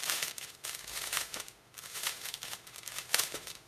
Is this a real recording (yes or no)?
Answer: no